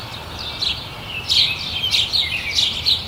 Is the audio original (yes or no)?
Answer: yes